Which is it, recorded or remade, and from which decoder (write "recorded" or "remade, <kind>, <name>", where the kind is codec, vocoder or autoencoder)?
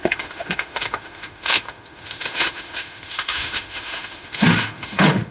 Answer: remade, autoencoder, DAC-VAE